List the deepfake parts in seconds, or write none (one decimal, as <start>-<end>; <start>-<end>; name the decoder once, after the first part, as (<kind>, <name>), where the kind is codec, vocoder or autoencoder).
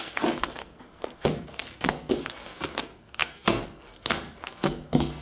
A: 0.0-5.2 (codec, SNAC)